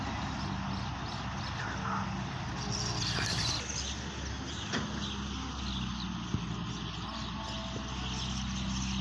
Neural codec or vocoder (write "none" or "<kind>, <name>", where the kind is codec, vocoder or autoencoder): none